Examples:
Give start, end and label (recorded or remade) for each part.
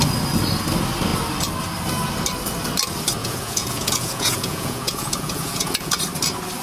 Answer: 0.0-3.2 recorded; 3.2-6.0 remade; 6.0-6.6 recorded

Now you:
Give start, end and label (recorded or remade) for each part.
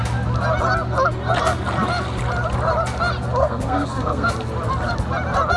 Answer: 0.0-3.4 recorded; 3.4-4.3 remade; 4.3-5.6 recorded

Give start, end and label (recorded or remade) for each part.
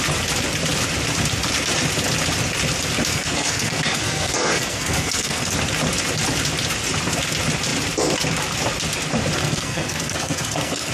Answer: 0.0-3.1 recorded; 3.1-5.5 remade; 5.5-9.4 recorded; 9.4-10.9 remade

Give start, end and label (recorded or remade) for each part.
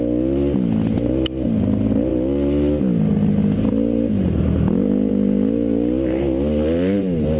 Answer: 0.0-7.4 recorded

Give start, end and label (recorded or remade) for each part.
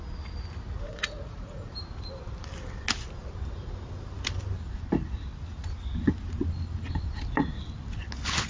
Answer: 0.0-0.9 recorded; 0.9-1.7 remade; 1.7-8.5 recorded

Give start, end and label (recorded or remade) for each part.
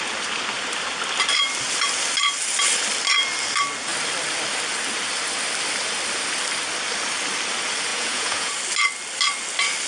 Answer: 0.0-7.9 recorded; 7.9-8.6 remade; 8.6-9.9 recorded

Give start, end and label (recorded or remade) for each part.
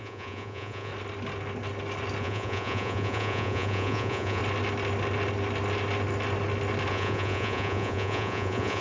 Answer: 0.0-0.9 remade; 0.9-2.2 recorded; 2.2-4.4 remade; 4.4-6.9 recorded; 6.9-8.8 remade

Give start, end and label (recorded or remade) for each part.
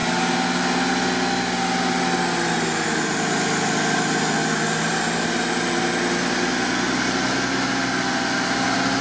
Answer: 0.0-9.0 recorded